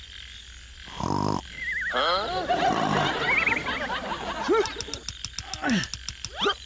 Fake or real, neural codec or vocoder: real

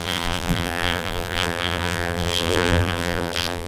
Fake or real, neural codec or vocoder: fake, vocoder, BigVGAN v2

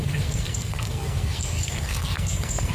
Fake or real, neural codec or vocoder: fake, codec, SNAC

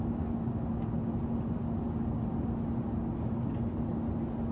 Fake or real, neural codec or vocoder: real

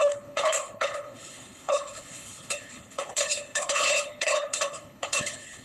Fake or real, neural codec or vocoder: fake, codec, HILCodec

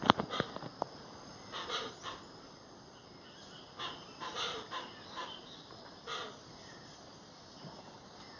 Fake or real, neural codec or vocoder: real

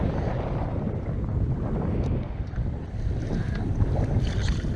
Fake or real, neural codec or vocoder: real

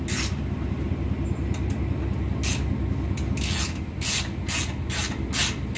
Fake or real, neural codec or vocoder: real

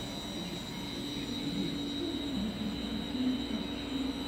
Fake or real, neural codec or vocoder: real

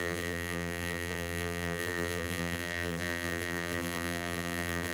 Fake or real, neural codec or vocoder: fake, vocoder, BigVGAN v2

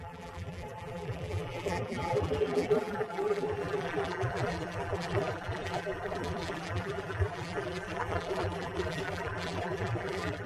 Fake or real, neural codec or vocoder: fake, vocoder, BigVGAN v2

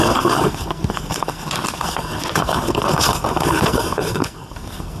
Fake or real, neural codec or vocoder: fake, codec, SNAC